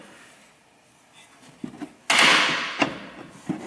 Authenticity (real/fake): real